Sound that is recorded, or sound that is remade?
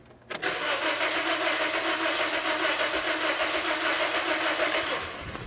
recorded